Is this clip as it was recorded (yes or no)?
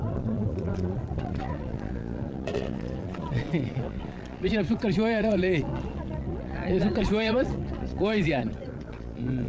no